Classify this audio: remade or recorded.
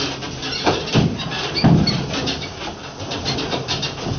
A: remade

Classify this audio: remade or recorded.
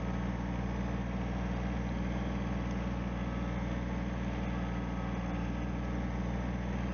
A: recorded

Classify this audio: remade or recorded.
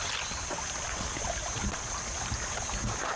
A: recorded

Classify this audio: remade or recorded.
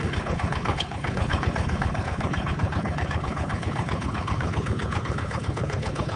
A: remade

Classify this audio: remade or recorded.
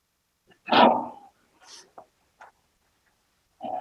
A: recorded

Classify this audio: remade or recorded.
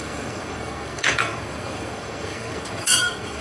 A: remade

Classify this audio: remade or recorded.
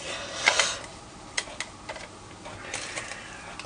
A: recorded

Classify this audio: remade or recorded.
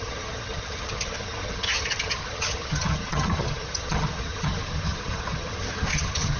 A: remade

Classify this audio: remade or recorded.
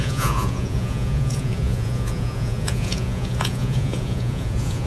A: remade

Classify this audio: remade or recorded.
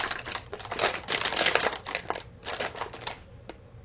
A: recorded